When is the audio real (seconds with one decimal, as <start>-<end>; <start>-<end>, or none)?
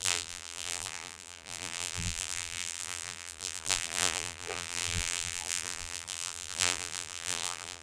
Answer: none